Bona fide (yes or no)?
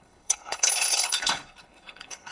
no